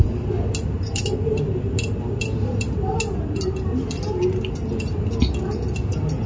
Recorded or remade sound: recorded